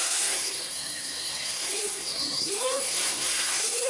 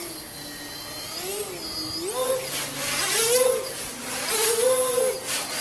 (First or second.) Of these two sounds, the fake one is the first